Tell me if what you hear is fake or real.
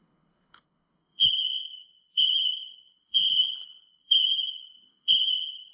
fake